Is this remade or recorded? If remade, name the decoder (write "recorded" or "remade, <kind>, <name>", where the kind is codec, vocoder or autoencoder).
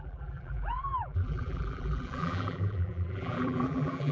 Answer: remade, vocoder, BigVGAN v2